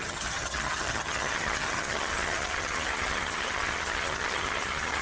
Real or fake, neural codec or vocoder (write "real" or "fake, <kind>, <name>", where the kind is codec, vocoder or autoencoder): fake, vocoder, HiFi-GAN